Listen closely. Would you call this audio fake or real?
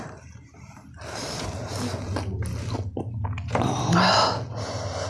real